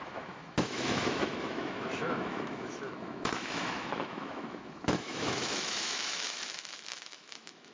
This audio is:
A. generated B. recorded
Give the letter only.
A